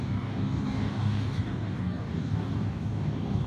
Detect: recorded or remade remade